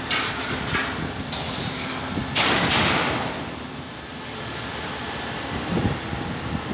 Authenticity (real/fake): real